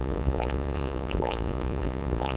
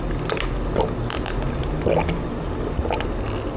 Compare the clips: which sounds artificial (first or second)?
first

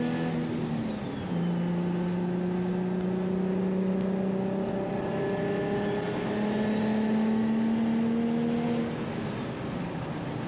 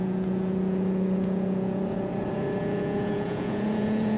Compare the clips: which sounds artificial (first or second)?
second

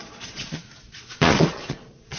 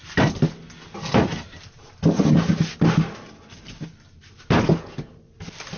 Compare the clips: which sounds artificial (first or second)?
first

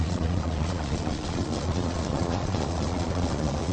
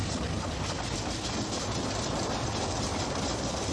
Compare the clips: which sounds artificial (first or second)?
first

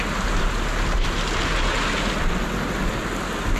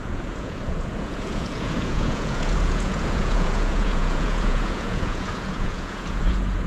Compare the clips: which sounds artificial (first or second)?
second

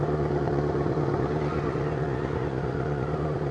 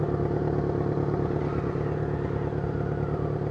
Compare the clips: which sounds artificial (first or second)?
first